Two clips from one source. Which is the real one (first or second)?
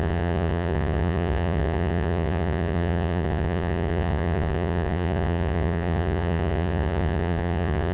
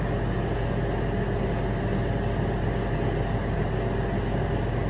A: second